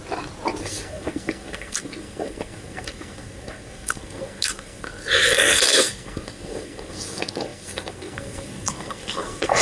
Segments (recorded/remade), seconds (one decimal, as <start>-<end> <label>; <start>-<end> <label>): 0.0-0.6 recorded; 0.6-9.6 remade